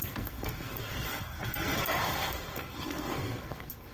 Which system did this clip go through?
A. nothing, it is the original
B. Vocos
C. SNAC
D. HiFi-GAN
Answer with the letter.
C